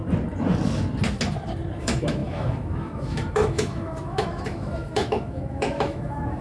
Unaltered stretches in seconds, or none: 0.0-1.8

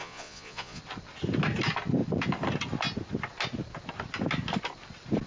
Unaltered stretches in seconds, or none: 0.8-5.3

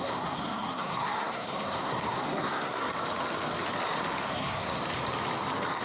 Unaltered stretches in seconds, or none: 2.9-4.3; 4.8-5.8

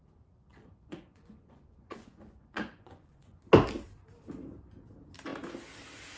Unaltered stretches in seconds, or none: 0.0-0.5; 3.4-6.2

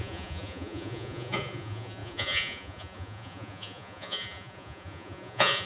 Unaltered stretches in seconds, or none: none

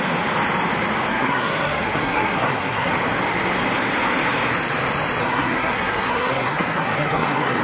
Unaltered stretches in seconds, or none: 0.0-1.1; 2.9-5.2

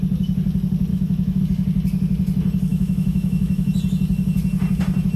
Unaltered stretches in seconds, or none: 0.0-0.9; 1.4-2.7; 3.7-5.2

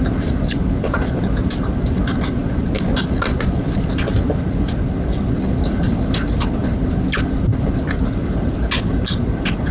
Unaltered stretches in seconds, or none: 0.0-9.7